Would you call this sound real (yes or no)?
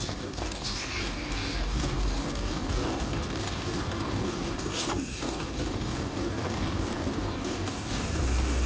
no